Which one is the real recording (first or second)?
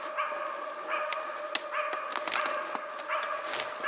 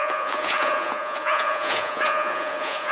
first